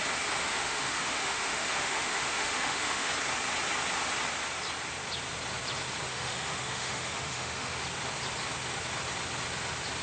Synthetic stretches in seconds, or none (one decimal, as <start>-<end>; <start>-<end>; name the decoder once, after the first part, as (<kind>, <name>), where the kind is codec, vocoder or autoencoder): 0.4-3.1 (autoencoder, DAC-VAE); 6.1-7.8